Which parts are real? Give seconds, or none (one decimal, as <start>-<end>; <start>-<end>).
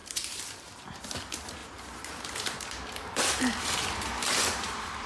1.0-1.6